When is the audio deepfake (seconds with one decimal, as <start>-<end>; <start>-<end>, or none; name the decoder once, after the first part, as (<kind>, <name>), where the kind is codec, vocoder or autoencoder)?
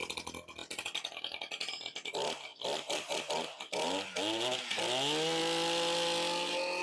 none